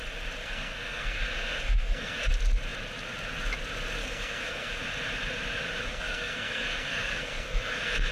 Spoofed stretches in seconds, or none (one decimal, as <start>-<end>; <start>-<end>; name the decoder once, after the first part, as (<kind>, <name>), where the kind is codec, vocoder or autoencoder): 0.4-2.3 (codec, SNAC); 4.0-4.8; 5.9-8.1